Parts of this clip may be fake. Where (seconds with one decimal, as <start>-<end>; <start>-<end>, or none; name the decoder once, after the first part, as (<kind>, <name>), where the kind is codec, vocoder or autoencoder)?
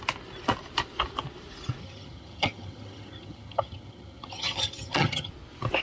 1.8-5.3 (vocoder, HiFi-GAN)